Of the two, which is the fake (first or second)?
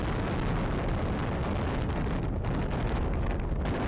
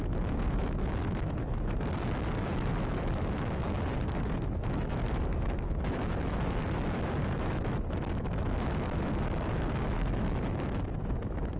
second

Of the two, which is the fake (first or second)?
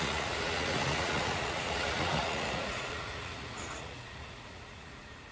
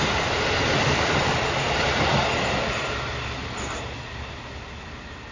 first